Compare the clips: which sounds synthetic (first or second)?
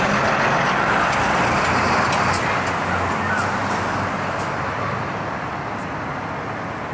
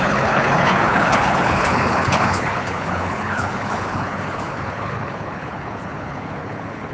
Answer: second